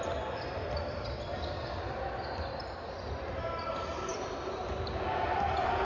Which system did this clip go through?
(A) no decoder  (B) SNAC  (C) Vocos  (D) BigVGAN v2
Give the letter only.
A